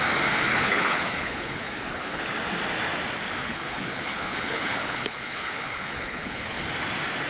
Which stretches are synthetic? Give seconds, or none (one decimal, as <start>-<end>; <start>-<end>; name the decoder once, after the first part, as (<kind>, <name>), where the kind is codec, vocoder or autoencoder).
0.5-2.2 (codec, HILCodec); 3.4-6.7